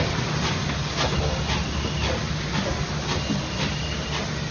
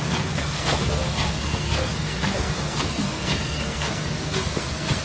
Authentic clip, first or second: first